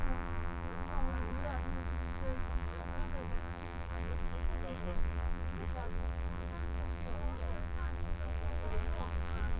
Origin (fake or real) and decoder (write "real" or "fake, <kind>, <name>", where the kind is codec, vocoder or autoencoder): fake, vocoder, BigVGAN v2